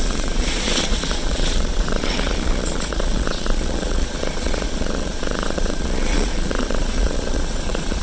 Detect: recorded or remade remade